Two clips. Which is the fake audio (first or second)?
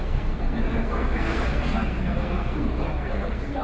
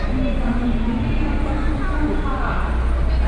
first